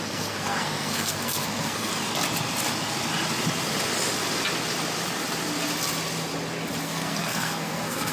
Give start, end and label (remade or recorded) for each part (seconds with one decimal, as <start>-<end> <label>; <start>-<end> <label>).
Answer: 0.0-1.9 remade; 1.9-6.8 recorded; 6.8-8.1 remade